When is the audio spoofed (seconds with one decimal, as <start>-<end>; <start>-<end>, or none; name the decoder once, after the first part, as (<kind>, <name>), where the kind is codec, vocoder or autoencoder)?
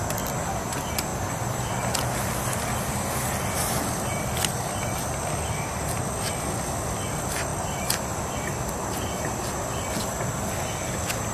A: 1.1-1.6 (vocoder, BigVGAN v2); 7.5-8.3